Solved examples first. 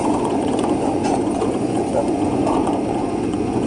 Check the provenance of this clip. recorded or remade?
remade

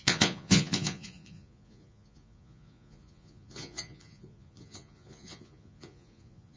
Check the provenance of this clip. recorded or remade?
remade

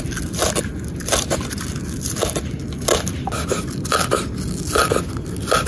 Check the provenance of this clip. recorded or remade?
recorded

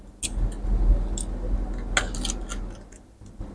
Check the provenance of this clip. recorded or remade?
recorded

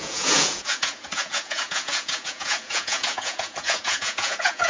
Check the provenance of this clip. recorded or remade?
remade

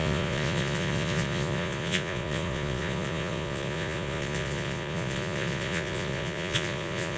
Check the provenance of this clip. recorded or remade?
remade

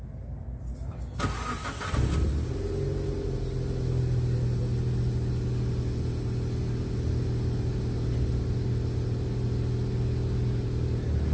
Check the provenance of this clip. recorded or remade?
recorded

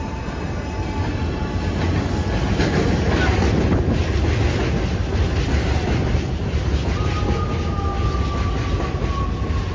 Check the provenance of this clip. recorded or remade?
recorded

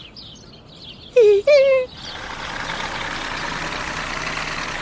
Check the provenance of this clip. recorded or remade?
recorded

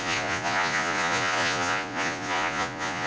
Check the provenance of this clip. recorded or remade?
remade